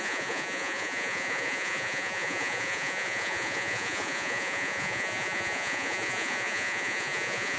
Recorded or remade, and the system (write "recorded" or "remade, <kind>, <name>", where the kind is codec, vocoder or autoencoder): remade, vocoder, Vocos